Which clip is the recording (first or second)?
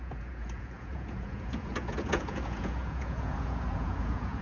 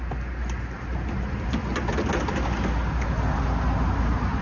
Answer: second